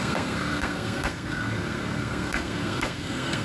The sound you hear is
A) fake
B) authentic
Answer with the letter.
A